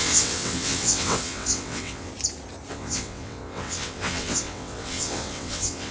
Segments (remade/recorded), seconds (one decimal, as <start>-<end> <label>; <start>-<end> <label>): 0.0-2.1 remade; 2.1-2.7 recorded; 2.7-5.9 remade